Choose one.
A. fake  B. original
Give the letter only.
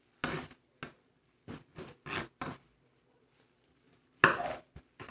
B